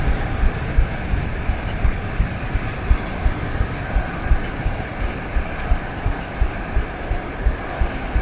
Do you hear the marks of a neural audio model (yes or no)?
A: no